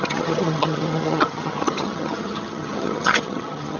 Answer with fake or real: fake